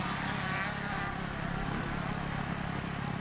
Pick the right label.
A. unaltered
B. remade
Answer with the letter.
A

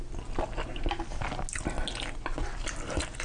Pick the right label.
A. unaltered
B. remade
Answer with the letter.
A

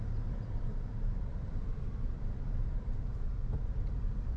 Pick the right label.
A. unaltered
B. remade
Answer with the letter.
B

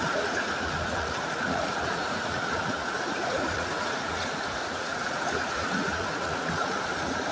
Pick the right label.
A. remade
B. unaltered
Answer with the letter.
A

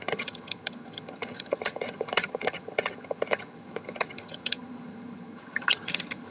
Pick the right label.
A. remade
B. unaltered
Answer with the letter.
A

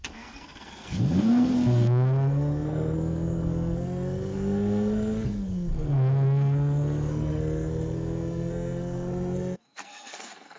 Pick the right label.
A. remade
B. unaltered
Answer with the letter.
A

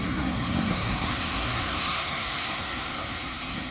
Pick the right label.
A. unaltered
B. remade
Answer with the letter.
B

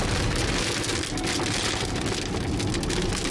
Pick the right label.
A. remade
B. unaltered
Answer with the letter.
B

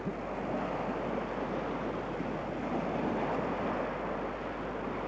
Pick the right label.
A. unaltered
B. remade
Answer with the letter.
A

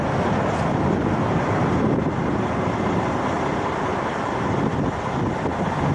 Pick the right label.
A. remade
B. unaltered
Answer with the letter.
B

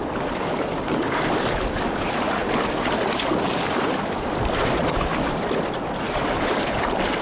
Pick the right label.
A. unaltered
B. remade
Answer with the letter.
A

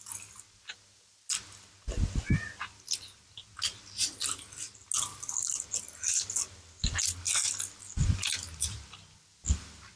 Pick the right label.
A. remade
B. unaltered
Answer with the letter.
B